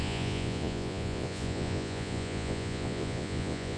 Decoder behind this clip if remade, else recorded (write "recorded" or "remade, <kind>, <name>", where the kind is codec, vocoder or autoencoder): remade, vocoder, Vocos